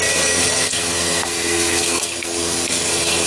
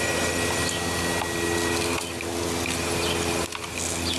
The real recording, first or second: second